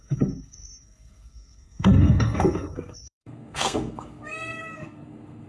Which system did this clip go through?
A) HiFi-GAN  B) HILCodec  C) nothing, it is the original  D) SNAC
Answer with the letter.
D